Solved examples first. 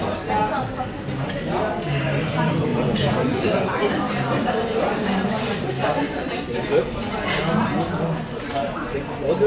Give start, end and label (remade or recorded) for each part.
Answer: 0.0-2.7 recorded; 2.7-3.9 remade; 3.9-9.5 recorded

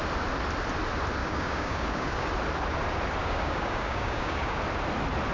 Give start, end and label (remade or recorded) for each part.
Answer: 0.0-1.2 recorded; 1.2-2.3 remade; 2.3-3.2 recorded; 3.2-4.6 remade; 4.6-5.3 recorded

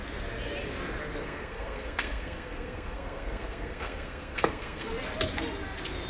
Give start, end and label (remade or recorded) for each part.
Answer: 0.0-1.2 recorded; 1.2-4.9 remade; 4.9-6.1 recorded

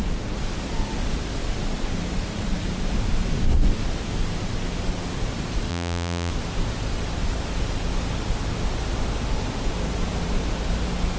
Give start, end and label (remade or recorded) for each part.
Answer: 0.0-5.7 recorded; 5.7-6.3 remade; 6.3-11.2 recorded